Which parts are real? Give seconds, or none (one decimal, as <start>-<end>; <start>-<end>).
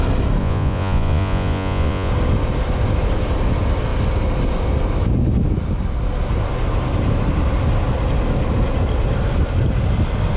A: 0.0-0.4; 2.1-10.4